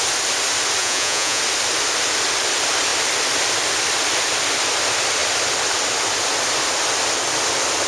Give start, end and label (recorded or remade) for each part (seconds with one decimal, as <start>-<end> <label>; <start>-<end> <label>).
0.0-0.8 recorded; 0.8-1.4 remade; 1.4-7.9 recorded